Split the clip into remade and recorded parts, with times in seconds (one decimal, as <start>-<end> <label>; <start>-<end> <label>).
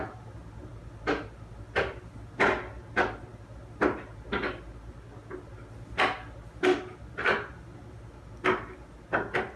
0.0-9.6 recorded